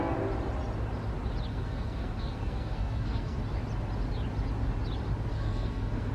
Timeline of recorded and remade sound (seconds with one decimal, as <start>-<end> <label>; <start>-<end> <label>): 0.0-1.5 recorded; 1.5-3.4 remade; 3.4-5.3 recorded; 5.3-6.1 remade